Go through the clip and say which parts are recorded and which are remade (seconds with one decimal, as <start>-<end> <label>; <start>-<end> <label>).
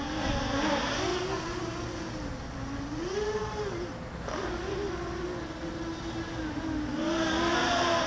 0.0-8.1 recorded